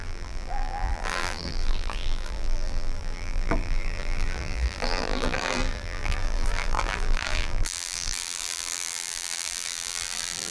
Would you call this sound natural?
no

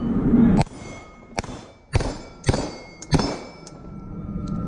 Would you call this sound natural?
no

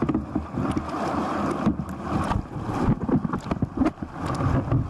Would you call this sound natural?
yes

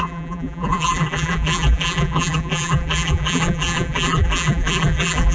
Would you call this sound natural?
no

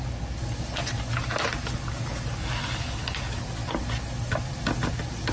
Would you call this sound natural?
yes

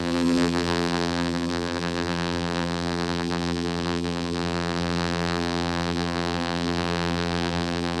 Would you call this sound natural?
no